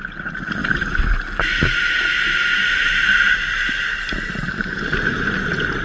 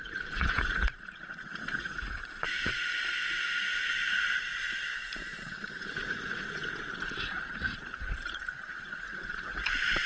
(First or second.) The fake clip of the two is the second